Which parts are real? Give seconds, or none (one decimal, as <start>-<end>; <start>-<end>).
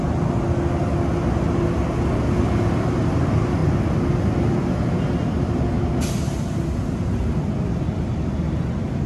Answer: 0.0-9.1